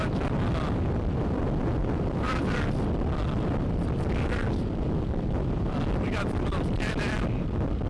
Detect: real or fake fake